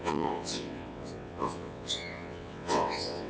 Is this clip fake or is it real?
fake